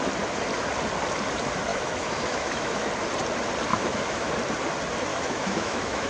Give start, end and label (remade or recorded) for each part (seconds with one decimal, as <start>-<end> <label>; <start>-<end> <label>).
0.0-1.7 recorded; 1.7-2.9 remade; 2.9-3.7 recorded; 3.7-4.3 remade; 4.3-5.1 recorded; 5.1-6.1 remade